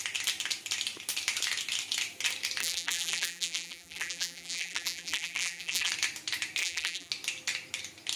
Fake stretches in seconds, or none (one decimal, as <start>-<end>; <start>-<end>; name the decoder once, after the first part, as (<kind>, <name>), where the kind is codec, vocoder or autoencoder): 2.6-5.9 (vocoder, BigVGAN v2); 6.6-7.1